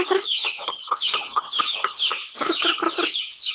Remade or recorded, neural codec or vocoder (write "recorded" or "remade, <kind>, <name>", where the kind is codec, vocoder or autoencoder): remade, codec, HILCodec